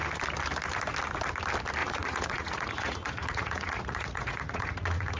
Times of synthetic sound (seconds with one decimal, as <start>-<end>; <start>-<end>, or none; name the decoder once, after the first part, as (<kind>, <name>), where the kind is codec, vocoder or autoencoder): 1.8-5.2 (vocoder, Vocos)